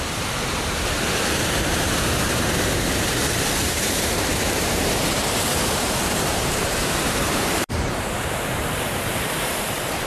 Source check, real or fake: fake